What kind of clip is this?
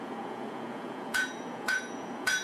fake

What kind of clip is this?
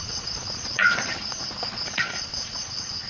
fake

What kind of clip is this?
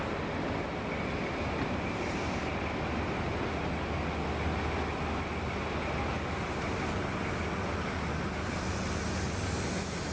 real